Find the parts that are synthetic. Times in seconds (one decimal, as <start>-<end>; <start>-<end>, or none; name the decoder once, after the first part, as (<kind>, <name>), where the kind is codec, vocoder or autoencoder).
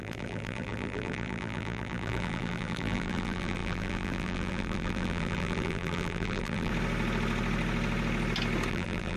0.0-6.7 (vocoder, BigVGAN v2); 8.7-9.2